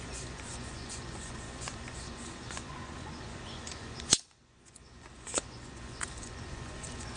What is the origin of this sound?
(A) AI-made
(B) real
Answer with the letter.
A